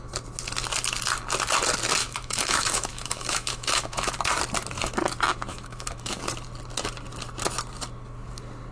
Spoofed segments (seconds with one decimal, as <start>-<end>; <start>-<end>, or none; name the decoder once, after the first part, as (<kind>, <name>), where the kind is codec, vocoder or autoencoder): 2.0-4.2 (autoencoder, DAC-VAE); 5.5-6.2